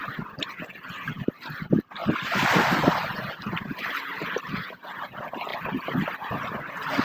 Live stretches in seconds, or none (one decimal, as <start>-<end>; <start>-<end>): 0.7-2.0; 4.4-5.5; 6.1-7.0